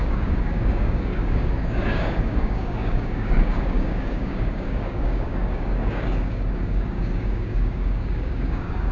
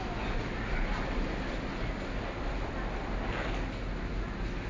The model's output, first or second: first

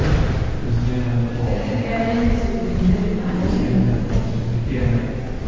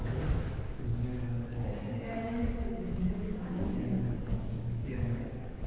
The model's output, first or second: second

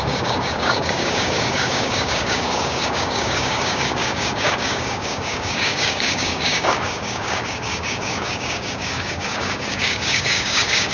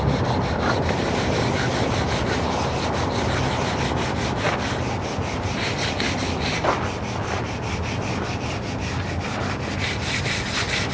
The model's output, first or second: first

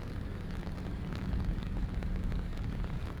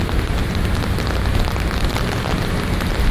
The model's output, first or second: first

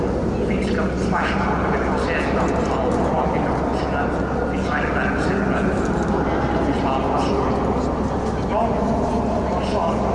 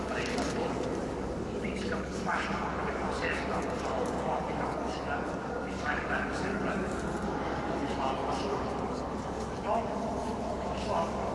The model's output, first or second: second